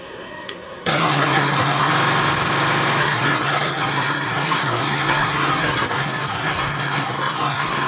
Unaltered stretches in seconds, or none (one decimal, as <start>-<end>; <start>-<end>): 1.9-3.0